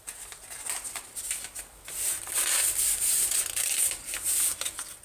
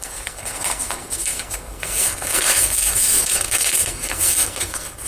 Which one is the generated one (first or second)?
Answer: second